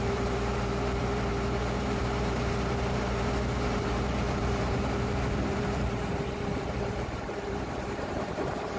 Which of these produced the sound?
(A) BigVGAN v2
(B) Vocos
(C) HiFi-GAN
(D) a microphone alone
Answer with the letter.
A